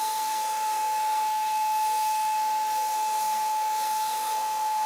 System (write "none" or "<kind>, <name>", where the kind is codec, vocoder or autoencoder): codec, SNAC